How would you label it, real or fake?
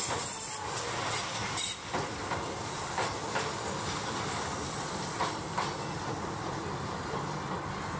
real